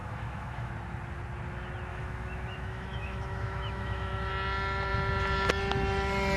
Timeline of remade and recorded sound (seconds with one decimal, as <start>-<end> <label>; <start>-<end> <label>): 0.0-0.7 remade; 0.7-1.9 recorded; 1.9-4.3 remade; 4.3-6.4 recorded

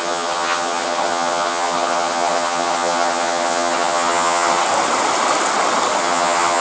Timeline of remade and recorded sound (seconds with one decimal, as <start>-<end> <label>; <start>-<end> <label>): 0.0-4.6 remade; 4.6-6.0 recorded; 6.0-6.6 remade

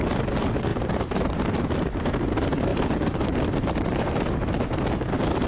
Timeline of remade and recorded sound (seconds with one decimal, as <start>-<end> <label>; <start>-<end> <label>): 0.0-0.7 recorded; 0.7-2.0 remade; 2.0-2.7 recorded; 2.7-4.8 remade; 4.8-5.5 recorded

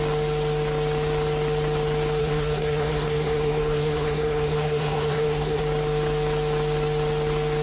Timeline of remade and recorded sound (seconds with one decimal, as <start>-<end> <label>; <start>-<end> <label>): 0.0-2.2 recorded; 2.2-5.6 remade; 5.6-7.6 recorded

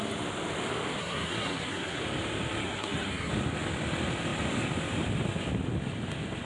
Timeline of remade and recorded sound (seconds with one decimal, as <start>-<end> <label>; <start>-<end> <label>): 0.0-1.0 recorded; 1.0-2.0 remade; 2.0-2.6 recorded; 2.6-3.3 remade; 3.3-6.4 recorded

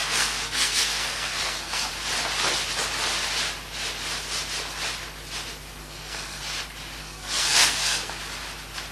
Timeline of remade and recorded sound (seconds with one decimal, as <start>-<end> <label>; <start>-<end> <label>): 0.0-1.9 remade; 1.9-5.8 recorded; 5.8-6.4 remade; 6.4-7.0 recorded; 7.0-8.2 remade; 8.2-8.9 recorded

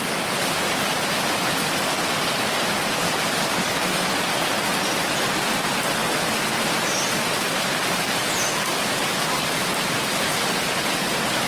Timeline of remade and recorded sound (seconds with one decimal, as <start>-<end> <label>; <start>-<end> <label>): 0.0-11.5 recorded